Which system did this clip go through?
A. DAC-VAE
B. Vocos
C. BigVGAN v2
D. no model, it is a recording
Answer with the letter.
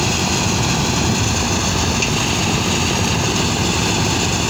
D